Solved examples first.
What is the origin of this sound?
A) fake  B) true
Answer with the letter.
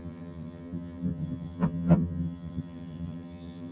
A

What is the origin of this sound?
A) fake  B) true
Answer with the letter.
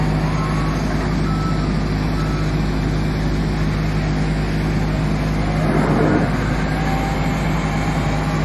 B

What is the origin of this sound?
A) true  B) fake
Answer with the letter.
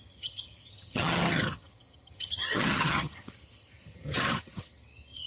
B